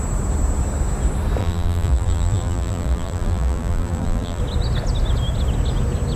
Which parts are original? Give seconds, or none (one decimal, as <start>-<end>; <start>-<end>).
0.0-1.4; 4.4-6.2

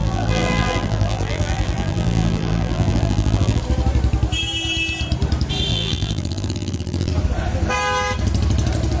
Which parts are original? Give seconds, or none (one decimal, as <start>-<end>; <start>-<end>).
3.6-5.7; 7.1-9.0

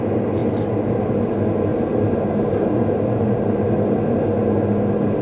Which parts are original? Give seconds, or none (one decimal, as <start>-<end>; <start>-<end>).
0.0-1.7; 3.6-5.2

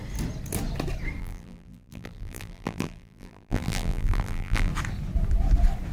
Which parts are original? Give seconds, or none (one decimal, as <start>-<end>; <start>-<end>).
0.0-1.2; 4.7-5.9